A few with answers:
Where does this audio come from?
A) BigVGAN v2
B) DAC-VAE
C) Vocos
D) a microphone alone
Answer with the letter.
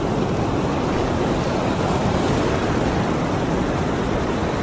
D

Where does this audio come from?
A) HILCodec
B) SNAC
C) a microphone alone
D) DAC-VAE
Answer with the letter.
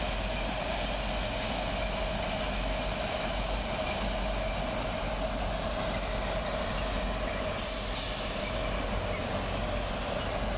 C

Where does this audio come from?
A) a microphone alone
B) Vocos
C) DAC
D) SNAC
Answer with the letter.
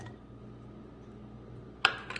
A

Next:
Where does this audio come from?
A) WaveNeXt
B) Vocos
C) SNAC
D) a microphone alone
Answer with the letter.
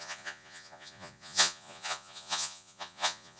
B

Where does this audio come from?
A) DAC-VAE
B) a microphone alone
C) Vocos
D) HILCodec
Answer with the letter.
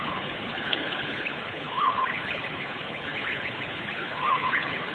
D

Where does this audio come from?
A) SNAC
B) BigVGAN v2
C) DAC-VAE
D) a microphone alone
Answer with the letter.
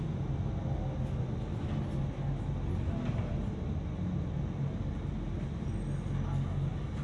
D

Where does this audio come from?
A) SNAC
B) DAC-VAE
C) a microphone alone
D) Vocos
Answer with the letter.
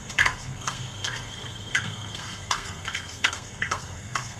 A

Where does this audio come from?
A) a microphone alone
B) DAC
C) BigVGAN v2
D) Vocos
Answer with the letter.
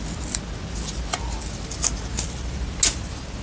A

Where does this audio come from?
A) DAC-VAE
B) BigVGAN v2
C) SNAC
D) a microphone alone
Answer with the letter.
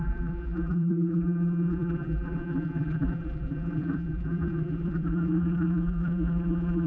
B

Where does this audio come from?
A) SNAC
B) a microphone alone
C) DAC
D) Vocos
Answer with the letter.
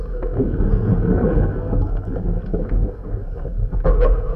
A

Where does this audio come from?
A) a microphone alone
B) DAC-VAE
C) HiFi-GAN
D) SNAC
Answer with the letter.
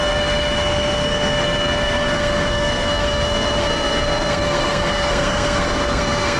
D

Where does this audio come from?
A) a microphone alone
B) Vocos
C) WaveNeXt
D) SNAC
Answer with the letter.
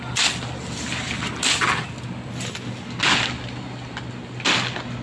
A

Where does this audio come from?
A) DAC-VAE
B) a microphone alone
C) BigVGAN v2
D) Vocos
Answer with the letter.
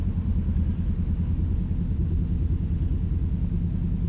B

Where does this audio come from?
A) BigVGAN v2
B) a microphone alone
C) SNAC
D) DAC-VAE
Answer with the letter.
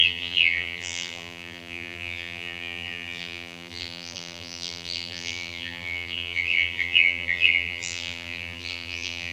A